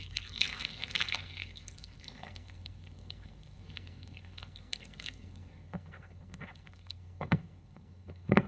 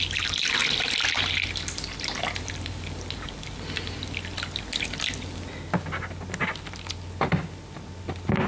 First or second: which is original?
second